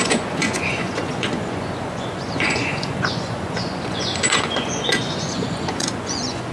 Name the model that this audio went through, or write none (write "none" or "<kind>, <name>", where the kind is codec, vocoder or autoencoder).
vocoder, Vocos